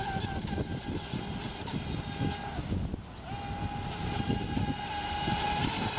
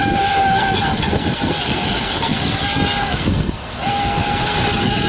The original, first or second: first